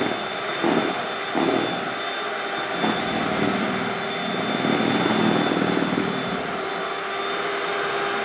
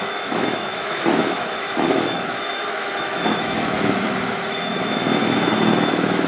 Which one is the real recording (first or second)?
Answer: first